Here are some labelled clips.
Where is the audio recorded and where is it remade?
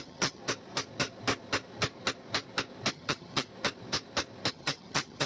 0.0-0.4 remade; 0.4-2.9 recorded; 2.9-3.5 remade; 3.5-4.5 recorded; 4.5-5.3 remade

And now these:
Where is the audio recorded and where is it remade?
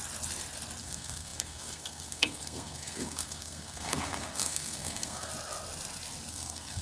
0.0-0.8 recorded; 0.8-5.3 remade; 5.3-6.3 recorded; 6.3-6.8 remade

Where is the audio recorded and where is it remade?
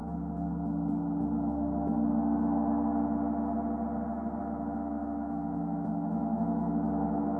0.0-4.4 recorded; 4.4-7.4 remade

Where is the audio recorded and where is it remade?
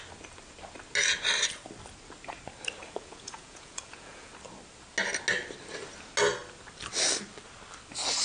0.0-2.8 recorded; 2.8-4.3 remade; 4.3-8.2 recorded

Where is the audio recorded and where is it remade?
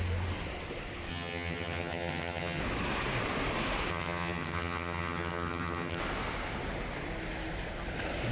0.0-1.1 recorded; 1.1-2.6 remade; 2.6-3.9 recorded; 3.9-6.0 remade; 6.0-8.3 recorded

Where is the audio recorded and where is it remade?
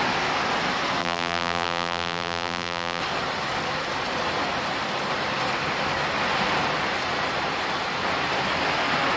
0.0-1.0 recorded; 1.0-3.0 remade; 3.0-9.2 recorded